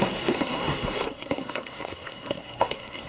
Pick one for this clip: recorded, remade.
remade